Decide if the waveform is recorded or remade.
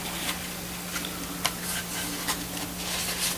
recorded